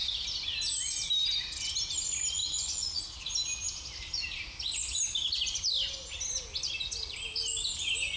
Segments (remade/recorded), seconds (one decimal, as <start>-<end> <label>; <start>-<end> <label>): 0.0-2.4 recorded; 2.4-3.0 remade; 3.0-8.2 recorded